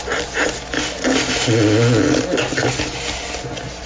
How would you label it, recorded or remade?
recorded